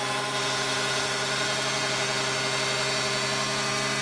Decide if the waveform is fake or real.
real